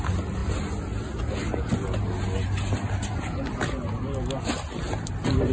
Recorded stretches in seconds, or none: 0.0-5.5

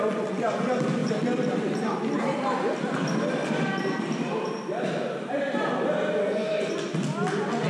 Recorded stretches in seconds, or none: 0.0-6.2; 6.7-7.7

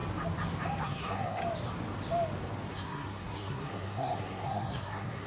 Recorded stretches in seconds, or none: 0.0-0.8; 1.4-2.7

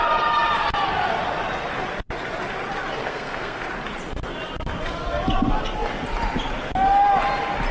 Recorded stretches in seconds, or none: 0.0-3.0; 3.7-7.7

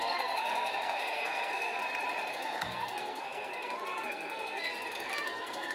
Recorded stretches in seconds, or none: 1.8-2.3